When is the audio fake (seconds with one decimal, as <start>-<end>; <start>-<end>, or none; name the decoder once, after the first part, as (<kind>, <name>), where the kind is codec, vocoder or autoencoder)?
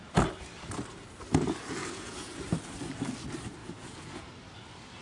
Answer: 1.8-2.4 (vocoder, Vocos); 3.6-4.3